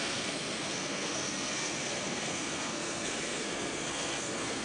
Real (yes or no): no